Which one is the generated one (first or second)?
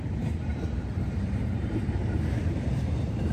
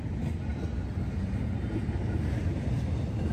first